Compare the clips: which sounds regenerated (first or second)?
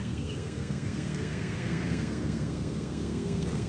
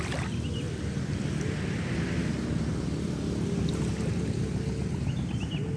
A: first